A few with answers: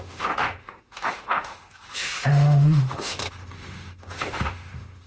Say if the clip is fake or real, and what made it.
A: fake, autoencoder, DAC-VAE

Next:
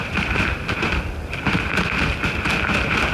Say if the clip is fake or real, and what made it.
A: real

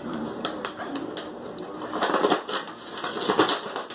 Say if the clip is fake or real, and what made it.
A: real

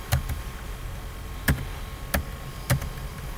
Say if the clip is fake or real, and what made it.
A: real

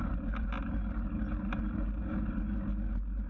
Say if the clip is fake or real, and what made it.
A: real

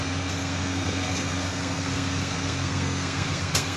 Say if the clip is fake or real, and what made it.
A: fake, codec, SNAC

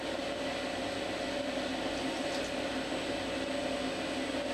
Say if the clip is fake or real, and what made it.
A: real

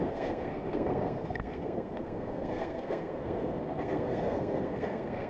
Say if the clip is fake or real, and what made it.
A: fake, codec, SNAC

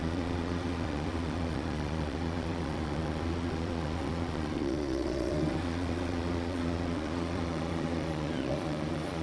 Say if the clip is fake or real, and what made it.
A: fake, vocoder, Vocos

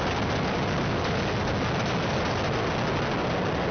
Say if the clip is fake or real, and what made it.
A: real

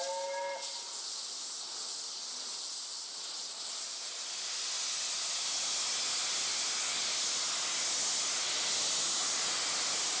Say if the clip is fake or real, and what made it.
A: real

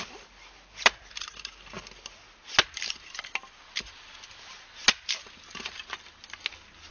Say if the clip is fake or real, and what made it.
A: real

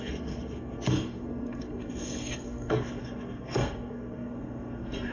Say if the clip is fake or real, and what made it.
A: fake, codec, SNAC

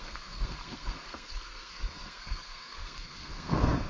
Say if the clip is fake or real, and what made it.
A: fake, codec, SNAC